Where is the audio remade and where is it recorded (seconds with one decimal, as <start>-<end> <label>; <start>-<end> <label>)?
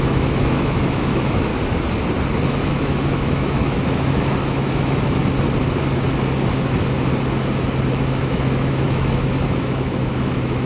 0.0-1.5 remade; 1.5-2.4 recorded; 2.4-5.2 remade; 5.2-7.9 recorded; 7.9-10.7 remade